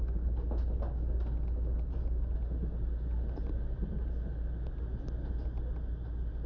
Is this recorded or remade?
recorded